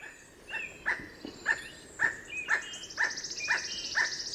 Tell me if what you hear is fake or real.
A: real